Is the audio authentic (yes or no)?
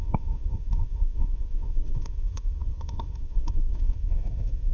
no